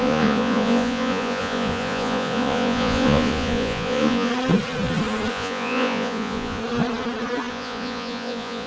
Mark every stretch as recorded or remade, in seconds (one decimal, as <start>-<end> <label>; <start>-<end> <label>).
0.0-4.3 remade; 4.3-5.3 recorded; 5.3-6.6 remade; 6.6-7.5 recorded; 7.5-8.7 remade